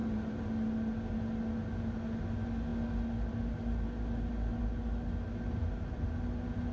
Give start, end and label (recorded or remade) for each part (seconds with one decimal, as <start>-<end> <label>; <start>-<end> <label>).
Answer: 0.0-0.5 remade; 0.5-6.7 recorded